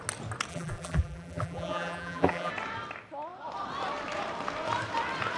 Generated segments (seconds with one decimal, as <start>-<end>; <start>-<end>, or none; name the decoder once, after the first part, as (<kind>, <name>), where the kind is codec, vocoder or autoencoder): 0.5-2.5 (vocoder, BigVGAN v2)